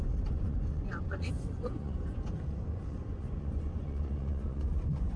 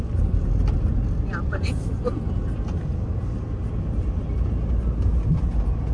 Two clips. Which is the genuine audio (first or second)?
second